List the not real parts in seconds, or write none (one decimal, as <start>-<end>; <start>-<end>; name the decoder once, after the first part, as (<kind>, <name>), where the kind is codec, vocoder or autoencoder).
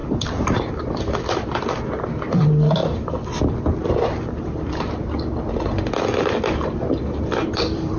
0.0-8.0 (vocoder, BigVGAN v2)